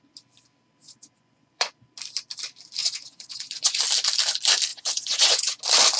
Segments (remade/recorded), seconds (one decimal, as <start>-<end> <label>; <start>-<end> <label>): 0.0-0.8 recorded; 0.8-1.7 remade; 1.7-2.8 recorded; 2.8-3.8 remade; 3.8-4.7 recorded; 4.7-5.6 remade; 5.6-6.0 recorded